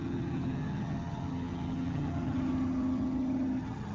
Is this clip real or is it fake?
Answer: fake